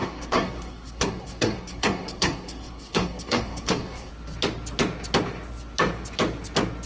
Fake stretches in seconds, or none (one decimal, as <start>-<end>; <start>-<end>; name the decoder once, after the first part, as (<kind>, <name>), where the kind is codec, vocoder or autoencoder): 0.0-4.1 (codec, SNAC)